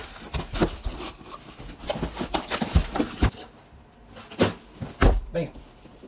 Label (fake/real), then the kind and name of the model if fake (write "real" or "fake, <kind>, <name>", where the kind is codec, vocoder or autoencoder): real